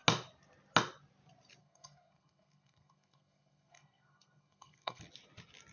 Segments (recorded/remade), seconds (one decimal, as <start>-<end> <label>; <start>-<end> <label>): 0.0-1.6 recorded; 1.6-5.0 remade; 5.0-5.7 recorded